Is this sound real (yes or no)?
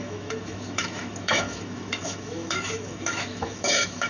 no